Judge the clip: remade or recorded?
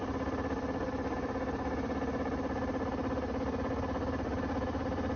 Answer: recorded